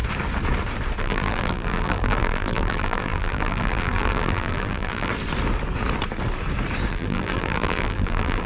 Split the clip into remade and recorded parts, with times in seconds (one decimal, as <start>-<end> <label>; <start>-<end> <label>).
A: 0.0-1.0 recorded; 1.0-5.1 remade; 5.1-6.9 recorded; 6.9-8.5 remade